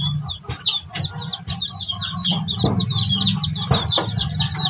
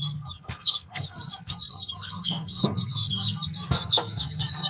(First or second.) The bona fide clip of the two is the first